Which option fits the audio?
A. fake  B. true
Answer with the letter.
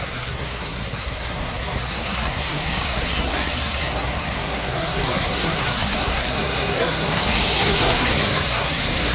A